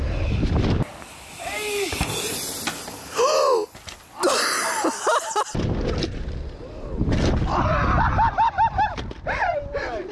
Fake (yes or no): no